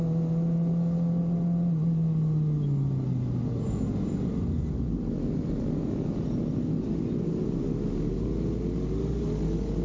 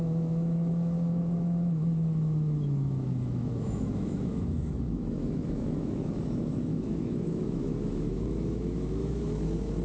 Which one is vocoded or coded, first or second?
second